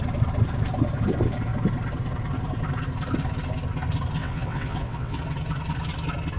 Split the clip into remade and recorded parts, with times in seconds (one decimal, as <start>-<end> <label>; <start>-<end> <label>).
0.0-4.2 recorded; 4.2-5.2 remade; 5.2-6.4 recorded